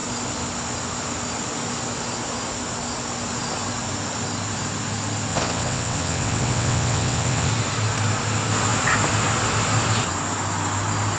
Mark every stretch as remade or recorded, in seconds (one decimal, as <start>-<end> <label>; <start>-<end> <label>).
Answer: 0.0-5.3 recorded; 5.3-7.5 remade; 7.5-11.2 recorded